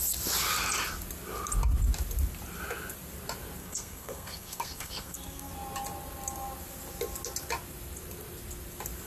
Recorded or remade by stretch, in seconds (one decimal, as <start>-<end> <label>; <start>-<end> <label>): 0.0-3.6 recorded; 3.6-5.5 remade; 5.5-9.1 recorded